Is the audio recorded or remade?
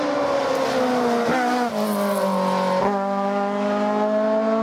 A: recorded